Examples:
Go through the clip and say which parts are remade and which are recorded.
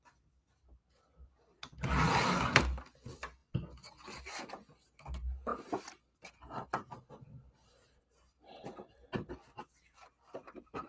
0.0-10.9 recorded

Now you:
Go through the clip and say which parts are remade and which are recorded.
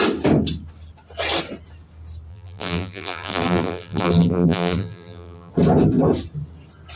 0.0-2.3 recorded; 2.3-5.5 remade; 5.5-7.0 recorded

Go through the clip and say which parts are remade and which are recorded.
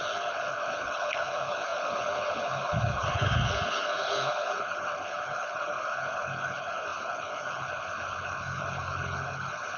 0.0-9.8 remade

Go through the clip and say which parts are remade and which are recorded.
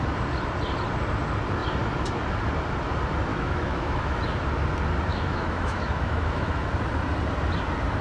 0.0-3.3 recorded; 3.3-4.2 remade; 4.2-5.1 recorded; 5.1-6.7 remade; 6.7-8.0 recorded